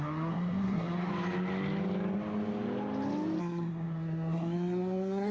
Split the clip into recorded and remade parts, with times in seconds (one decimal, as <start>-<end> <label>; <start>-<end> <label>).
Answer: 0.0-1.1 remade; 1.1-3.4 recorded; 3.4-5.3 remade